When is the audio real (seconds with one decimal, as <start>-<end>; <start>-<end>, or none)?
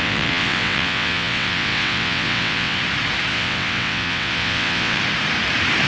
2.8-3.3; 5.0-5.9